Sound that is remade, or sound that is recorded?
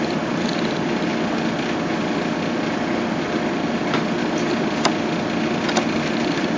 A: recorded